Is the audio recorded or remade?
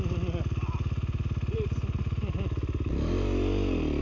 recorded